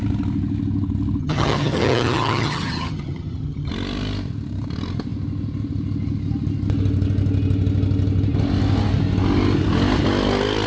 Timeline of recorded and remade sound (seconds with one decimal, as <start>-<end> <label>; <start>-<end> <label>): 0.0-1.2 recorded; 1.2-3.7 remade; 3.7-10.7 recorded

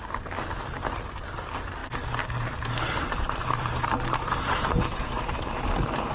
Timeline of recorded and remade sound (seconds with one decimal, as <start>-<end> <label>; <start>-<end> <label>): 0.0-1.8 recorded; 1.8-5.2 remade; 5.2-6.1 recorded

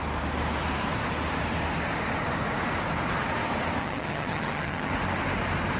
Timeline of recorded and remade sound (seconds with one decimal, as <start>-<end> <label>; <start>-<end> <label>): 0.0-3.8 recorded; 3.8-4.9 remade; 4.9-5.8 recorded

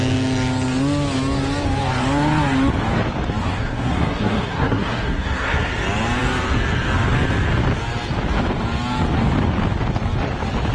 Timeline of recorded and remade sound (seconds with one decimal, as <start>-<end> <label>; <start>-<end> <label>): 0.0-3.4 recorded; 3.4-5.7 remade; 5.7-10.7 recorded